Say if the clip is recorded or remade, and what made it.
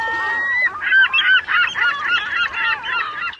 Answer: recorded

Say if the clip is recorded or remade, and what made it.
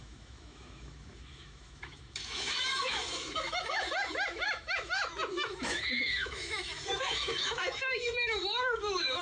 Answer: remade, autoencoder, DAC-VAE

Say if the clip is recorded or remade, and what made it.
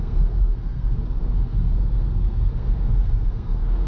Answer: remade, codec, SNAC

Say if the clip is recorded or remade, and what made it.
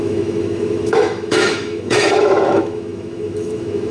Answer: remade, autoencoder, DAC-VAE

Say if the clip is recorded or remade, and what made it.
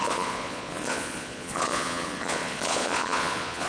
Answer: remade, vocoder, Vocos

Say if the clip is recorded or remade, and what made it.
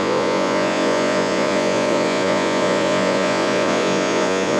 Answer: remade, vocoder, Vocos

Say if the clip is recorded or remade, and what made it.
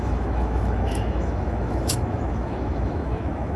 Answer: remade, autoencoder, DAC-VAE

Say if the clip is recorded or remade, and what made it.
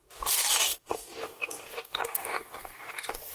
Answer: remade, codec, DAC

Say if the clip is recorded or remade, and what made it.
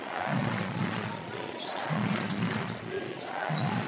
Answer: remade, vocoder, Vocos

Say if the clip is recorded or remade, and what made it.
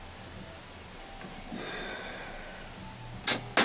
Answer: recorded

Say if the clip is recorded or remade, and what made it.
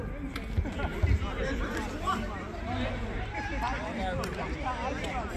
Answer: recorded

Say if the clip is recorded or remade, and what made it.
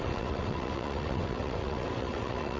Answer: remade, vocoder, WaveNeXt